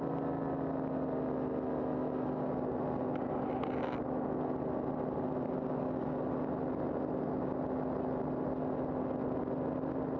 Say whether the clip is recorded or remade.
recorded